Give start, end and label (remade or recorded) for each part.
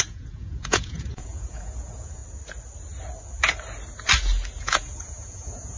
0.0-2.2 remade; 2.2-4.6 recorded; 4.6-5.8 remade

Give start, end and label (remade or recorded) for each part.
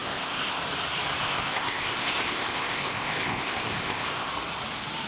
0.0-0.6 remade; 0.6-1.2 recorded; 1.2-4.3 remade; 4.3-5.1 recorded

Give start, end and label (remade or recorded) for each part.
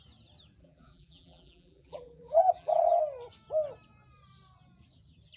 0.0-0.6 recorded; 0.6-3.0 remade; 3.0-5.4 recorded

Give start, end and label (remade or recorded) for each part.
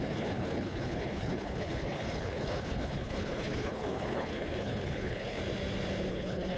0.0-5.4 remade; 5.4-6.1 recorded; 6.1-6.6 remade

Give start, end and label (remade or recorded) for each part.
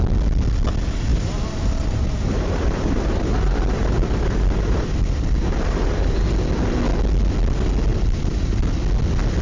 0.0-1.1 recorded; 1.1-6.3 remade; 6.3-7.9 recorded; 7.9-8.6 remade; 8.6-9.4 recorded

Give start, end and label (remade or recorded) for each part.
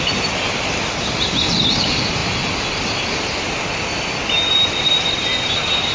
0.0-5.9 recorded